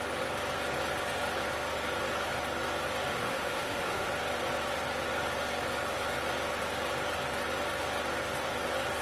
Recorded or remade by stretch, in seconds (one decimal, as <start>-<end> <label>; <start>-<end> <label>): 0.0-3.1 recorded; 3.1-4.1 remade; 4.1-9.0 recorded